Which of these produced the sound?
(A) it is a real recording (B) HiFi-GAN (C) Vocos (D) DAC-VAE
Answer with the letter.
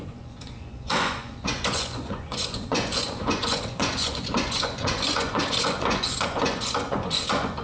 C